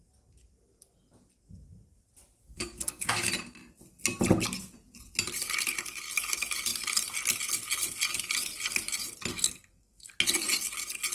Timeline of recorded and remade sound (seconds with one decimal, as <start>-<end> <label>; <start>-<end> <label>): 0.0-2.4 recorded; 2.4-3.3 remade; 3.3-9.3 recorded; 9.3-10.1 remade; 10.1-11.1 recorded